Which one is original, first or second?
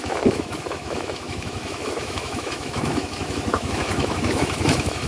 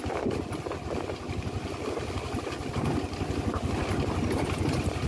second